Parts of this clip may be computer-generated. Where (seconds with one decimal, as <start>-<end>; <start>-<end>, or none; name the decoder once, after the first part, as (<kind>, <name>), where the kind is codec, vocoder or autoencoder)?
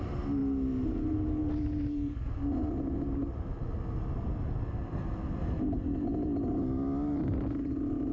none